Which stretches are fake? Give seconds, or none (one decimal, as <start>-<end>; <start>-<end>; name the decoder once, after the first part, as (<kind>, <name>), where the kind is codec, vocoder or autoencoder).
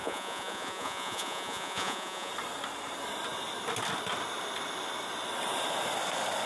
0.0-2.3 (vocoder, Vocos)